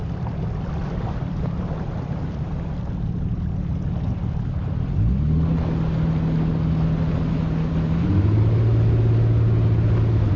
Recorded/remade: recorded